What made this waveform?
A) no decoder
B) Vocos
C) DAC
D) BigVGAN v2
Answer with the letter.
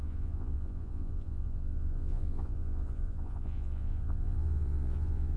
B